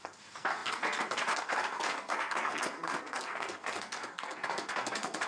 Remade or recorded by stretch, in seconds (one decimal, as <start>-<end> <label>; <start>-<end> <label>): 0.0-5.3 remade

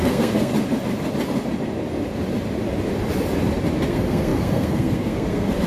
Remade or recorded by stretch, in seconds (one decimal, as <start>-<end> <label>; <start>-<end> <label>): 0.0-0.5 remade; 0.5-3.9 recorded; 3.9-5.7 remade

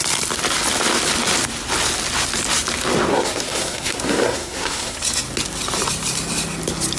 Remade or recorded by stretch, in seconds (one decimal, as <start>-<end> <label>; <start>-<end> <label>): 0.0-3.1 recorded; 3.1-5.0 remade; 5.0-7.0 recorded

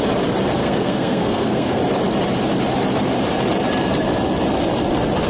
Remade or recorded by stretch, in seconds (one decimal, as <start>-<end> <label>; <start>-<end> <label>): 0.0-0.6 recorded; 0.6-1.8 remade; 1.8-5.3 recorded

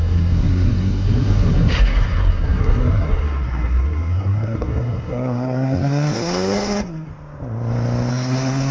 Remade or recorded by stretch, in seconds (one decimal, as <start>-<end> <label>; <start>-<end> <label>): 0.0-7.1 remade; 7.1-8.1 recorded; 8.1-8.7 remade

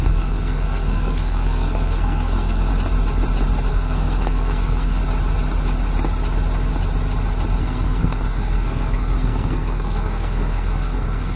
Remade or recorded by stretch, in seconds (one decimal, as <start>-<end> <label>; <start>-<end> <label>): 0.0-2.7 remade; 2.7-3.7 recorded; 3.7-5.0 remade; 5.0-7.6 recorded; 7.6-11.4 remade